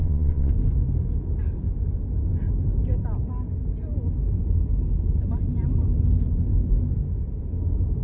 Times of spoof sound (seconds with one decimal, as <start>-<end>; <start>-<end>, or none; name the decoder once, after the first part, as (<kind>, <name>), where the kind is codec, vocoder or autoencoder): 0.0-0.5 (vocoder, Vocos)